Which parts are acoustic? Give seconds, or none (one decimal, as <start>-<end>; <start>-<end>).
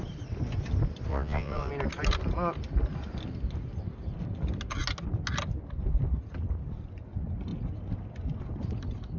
0.0-1.1; 1.7-9.2